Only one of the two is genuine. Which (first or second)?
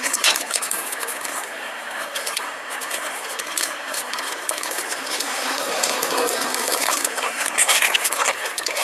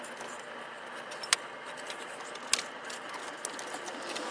second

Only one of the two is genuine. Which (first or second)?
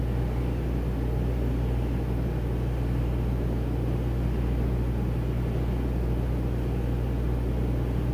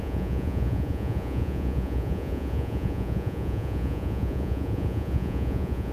first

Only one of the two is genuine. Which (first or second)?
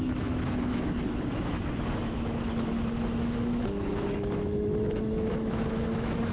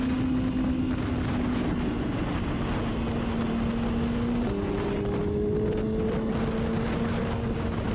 second